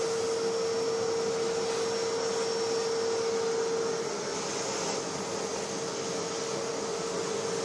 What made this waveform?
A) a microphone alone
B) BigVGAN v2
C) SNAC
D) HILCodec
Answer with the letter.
A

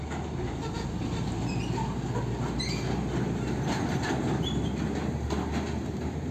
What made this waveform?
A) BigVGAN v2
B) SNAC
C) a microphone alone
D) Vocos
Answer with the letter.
C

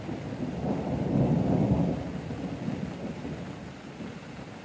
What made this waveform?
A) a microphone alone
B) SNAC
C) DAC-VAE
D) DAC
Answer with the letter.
A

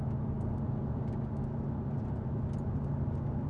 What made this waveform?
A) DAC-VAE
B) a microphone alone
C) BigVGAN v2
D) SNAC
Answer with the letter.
B